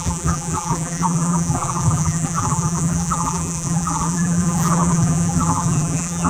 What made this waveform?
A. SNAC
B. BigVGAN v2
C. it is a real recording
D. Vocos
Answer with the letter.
B